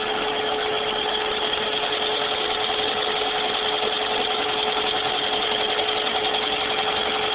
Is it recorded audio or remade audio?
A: recorded